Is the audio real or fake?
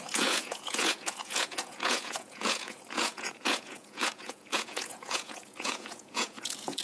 fake